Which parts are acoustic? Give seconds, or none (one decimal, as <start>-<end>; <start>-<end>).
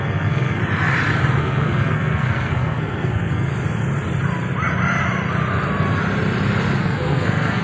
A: 0.6-1.4; 3.5-6.8